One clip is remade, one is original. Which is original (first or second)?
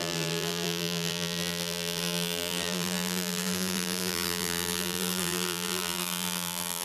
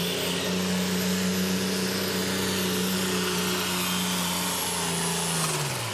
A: second